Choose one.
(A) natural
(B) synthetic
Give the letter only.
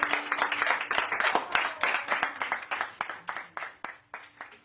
A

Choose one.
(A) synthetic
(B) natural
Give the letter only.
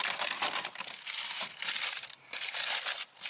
B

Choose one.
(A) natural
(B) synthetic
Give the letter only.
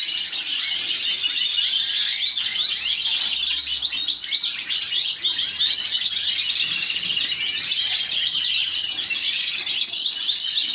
A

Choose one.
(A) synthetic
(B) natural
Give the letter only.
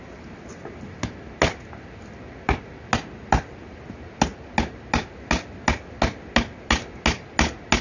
B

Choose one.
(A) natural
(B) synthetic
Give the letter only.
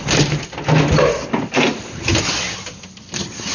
A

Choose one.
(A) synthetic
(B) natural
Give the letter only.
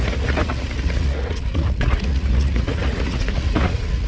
A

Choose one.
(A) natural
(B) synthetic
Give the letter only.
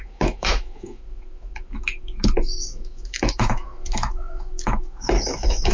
B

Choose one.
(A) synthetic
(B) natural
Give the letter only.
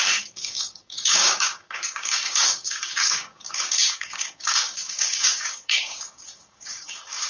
A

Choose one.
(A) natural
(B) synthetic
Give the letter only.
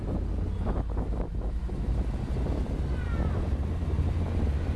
A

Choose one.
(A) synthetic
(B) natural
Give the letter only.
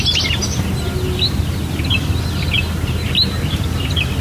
B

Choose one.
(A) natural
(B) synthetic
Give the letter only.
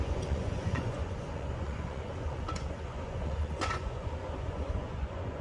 B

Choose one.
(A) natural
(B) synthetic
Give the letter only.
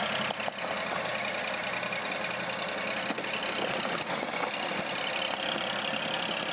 A